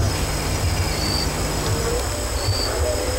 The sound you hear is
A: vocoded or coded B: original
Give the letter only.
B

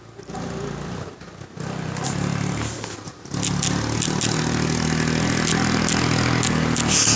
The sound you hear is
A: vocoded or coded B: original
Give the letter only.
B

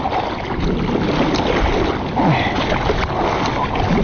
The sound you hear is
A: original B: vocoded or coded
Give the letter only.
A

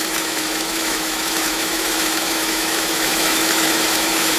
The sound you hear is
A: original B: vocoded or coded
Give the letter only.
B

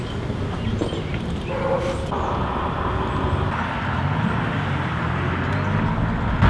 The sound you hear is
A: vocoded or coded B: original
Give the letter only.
B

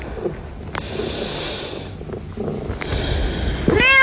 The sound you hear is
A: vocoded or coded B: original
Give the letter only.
B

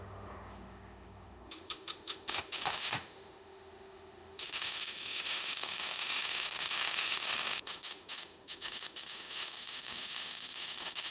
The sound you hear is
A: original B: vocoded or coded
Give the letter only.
B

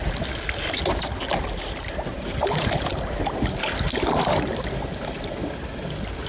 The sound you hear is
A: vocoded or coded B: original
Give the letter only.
B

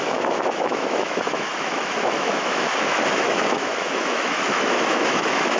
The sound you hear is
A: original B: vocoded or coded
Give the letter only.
B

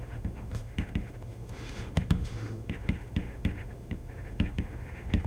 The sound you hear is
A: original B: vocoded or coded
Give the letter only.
B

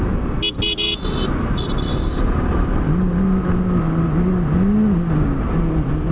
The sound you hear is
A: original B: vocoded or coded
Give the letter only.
A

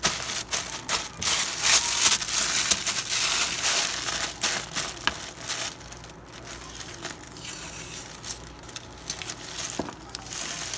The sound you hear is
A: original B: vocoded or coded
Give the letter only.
A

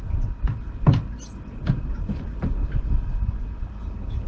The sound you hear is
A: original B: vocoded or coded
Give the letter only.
A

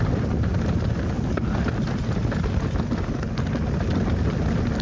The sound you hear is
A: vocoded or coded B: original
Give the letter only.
B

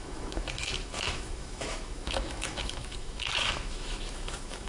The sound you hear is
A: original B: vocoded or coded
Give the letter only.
B